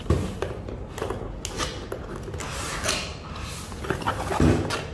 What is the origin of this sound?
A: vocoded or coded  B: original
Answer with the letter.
B